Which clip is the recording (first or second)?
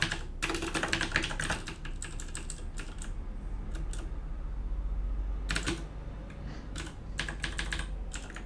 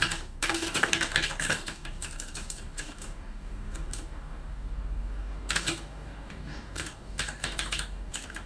first